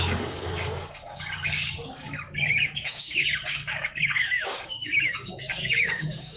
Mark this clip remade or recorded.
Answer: remade